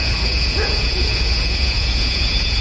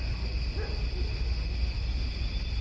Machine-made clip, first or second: first